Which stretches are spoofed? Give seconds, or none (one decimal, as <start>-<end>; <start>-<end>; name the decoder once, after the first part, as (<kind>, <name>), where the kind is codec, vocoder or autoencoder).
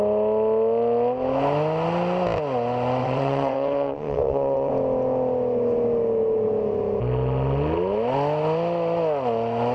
3.0-4.7 (vocoder, WaveNeXt)